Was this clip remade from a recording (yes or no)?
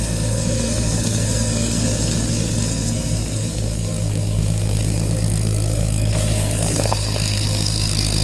yes